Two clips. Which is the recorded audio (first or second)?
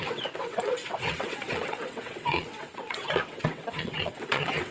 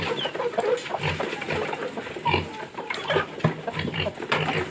second